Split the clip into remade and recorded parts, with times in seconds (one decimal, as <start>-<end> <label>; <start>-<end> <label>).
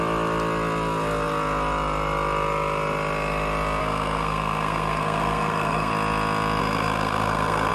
0.0-3.8 recorded; 3.8-5.9 remade; 5.9-6.6 recorded; 6.6-7.7 remade